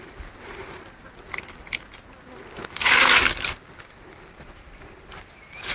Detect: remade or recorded recorded